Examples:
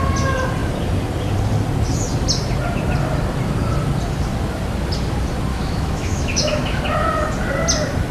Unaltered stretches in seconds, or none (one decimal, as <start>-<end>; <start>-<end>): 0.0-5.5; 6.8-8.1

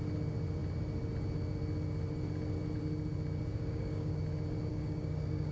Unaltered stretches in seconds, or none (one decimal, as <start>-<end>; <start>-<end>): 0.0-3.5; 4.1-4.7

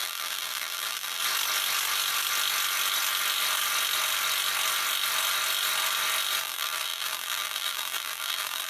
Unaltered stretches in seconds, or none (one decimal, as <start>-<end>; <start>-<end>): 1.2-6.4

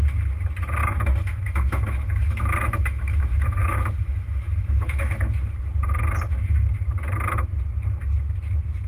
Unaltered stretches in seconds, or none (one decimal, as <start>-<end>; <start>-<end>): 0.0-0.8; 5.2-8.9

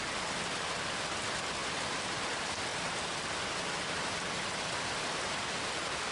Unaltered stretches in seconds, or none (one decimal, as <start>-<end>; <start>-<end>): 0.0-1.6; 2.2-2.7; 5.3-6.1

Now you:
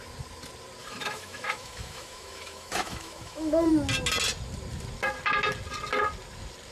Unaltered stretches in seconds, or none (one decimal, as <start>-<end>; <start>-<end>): 0.0-0.8; 3.7-6.7

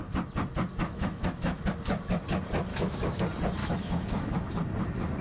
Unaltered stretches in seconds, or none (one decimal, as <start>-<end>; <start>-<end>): 0.0-0.8; 1.6-2.7; 3.2-3.6; 4.3-5.2

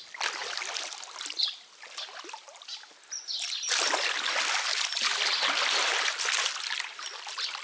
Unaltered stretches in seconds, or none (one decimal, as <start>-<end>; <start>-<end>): 0.0-7.6